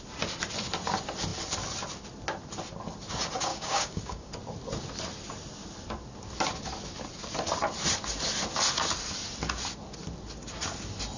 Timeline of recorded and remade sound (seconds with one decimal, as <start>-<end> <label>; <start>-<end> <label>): 0.0-3.5 recorded; 3.5-4.3 remade; 4.3-11.2 recorded